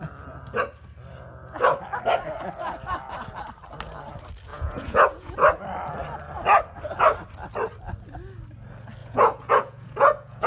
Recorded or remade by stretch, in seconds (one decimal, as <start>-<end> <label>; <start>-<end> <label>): 0.0-4.5 recorded; 4.5-5.3 remade; 5.3-9.0 recorded; 9.0-10.5 remade